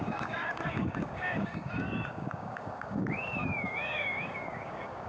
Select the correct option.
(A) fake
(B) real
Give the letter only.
A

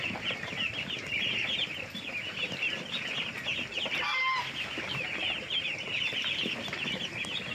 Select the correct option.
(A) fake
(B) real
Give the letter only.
B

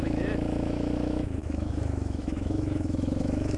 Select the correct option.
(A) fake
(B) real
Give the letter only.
A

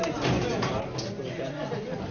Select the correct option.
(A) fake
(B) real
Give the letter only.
B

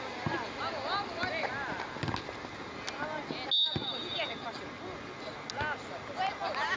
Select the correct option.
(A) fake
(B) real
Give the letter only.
B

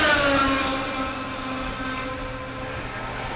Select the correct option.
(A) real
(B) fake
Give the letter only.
A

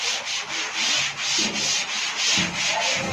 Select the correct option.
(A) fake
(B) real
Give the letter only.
B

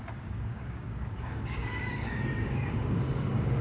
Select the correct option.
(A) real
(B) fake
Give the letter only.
B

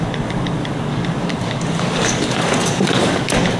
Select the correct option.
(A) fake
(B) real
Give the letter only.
A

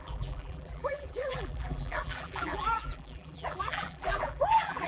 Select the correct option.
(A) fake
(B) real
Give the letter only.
A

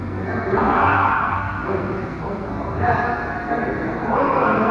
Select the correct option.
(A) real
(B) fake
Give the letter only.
B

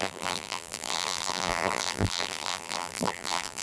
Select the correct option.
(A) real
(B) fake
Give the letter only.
B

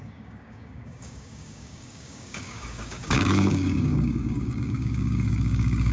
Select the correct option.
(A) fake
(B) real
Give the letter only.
A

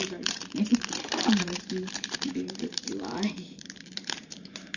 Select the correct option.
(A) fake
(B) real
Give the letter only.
A